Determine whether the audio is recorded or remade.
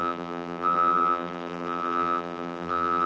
remade